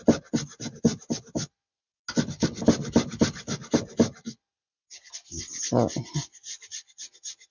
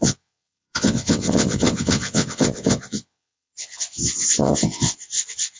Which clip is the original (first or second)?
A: first